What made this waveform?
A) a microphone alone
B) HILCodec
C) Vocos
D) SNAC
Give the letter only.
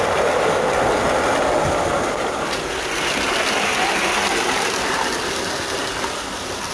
A